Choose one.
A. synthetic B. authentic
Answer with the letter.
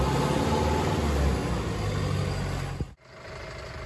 B